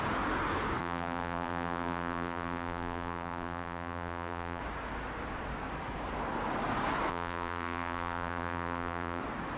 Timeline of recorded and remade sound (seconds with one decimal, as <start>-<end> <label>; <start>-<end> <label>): 0.0-0.8 recorded; 0.8-4.6 remade; 4.6-7.1 recorded; 7.1-9.2 remade; 9.2-9.6 recorded